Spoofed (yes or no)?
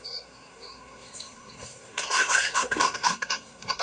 yes